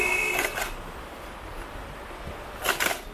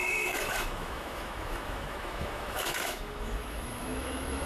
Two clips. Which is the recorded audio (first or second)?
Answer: first